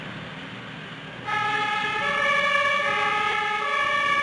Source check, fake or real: real